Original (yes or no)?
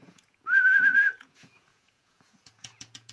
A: no